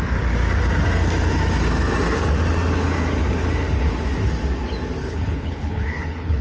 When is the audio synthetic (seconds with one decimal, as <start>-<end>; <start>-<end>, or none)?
5.0-6.4